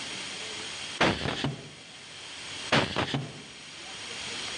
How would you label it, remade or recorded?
recorded